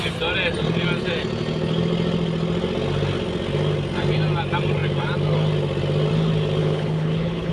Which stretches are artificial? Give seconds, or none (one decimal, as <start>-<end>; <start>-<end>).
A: 6.6-7.5